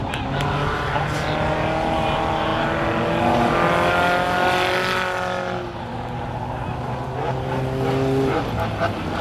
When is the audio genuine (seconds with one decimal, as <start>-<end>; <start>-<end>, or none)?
0.0-9.2